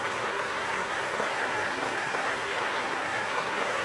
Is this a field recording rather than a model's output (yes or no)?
no